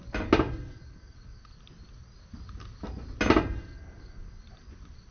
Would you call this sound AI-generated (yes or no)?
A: no